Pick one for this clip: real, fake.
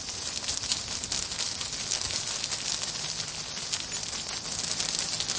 real